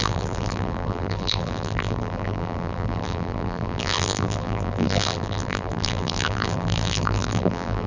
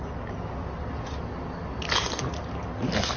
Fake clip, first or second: first